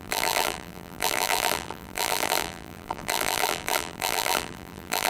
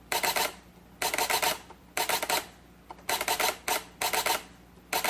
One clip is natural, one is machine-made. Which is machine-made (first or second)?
first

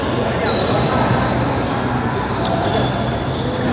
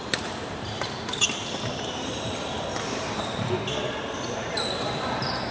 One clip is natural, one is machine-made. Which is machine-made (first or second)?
second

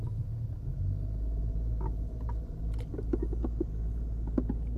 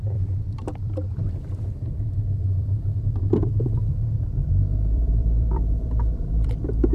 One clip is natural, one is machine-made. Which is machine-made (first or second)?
second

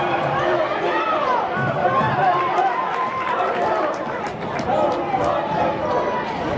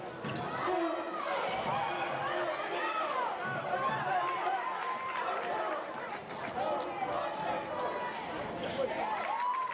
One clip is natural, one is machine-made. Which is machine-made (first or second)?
first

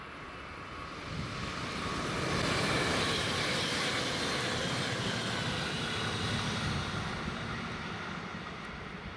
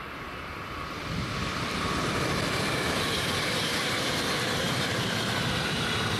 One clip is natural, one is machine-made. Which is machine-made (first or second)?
second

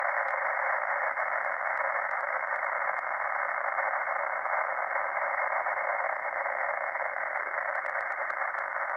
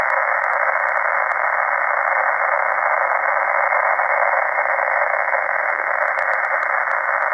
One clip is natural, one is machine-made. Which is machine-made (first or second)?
first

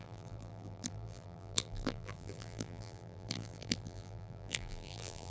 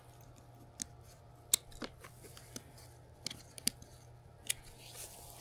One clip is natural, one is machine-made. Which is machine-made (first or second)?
first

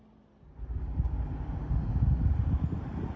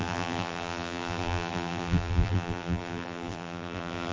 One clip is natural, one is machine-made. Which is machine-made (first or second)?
second